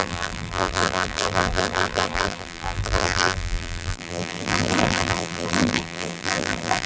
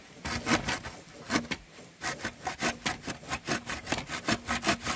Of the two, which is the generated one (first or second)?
first